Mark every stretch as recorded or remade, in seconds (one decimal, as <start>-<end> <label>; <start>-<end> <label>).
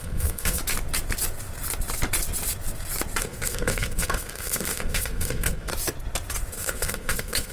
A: 0.0-0.6 remade; 0.6-3.2 recorded; 3.2-5.7 remade; 5.7-6.5 recorded; 6.5-7.5 remade